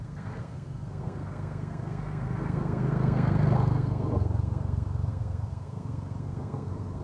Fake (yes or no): yes